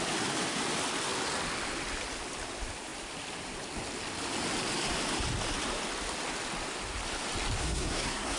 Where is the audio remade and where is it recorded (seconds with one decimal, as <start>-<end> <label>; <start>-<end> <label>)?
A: 0.0-7.6 recorded; 7.6-8.4 remade